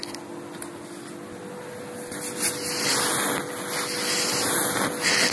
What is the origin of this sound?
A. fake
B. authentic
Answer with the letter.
B